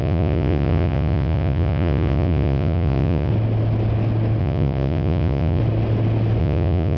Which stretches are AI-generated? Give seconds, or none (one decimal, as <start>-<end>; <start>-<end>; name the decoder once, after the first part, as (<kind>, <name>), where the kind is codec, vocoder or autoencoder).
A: 0.0-3.3 (vocoder, Vocos); 4.4-5.6; 6.4-7.0